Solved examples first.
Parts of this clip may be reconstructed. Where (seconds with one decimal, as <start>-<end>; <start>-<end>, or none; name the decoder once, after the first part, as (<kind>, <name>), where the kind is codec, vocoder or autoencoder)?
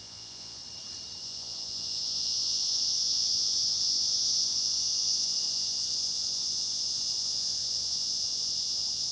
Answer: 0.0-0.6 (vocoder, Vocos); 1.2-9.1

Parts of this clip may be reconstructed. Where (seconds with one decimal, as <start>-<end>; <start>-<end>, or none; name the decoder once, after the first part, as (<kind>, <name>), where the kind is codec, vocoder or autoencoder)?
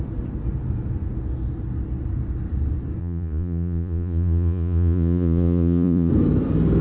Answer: 3.0-6.1 (vocoder, Vocos)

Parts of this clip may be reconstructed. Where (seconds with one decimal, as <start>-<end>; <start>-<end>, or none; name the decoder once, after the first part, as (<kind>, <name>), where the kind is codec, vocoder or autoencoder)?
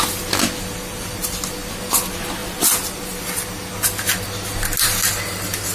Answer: none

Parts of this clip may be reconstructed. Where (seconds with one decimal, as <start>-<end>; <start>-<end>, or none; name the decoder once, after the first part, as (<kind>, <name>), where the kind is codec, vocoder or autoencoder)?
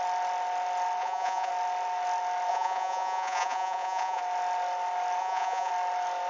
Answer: 1.0-1.5 (vocoder, Vocos); 2.5-4.2; 5.2-5.7